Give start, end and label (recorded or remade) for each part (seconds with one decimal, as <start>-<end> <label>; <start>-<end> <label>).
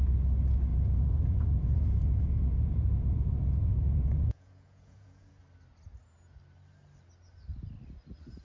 0.0-0.7 recorded; 0.7-5.3 remade; 5.3-8.4 recorded